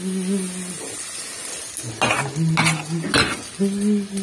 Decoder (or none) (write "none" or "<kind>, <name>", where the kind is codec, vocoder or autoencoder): none